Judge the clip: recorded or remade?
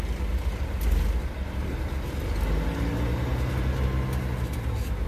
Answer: recorded